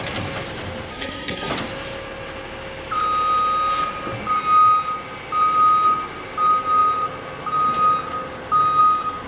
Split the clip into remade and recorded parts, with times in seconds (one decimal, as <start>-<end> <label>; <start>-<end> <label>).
0.0-0.9 recorded; 0.9-1.5 remade; 1.5-9.3 recorded